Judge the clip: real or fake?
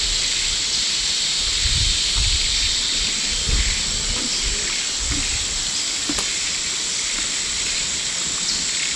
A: real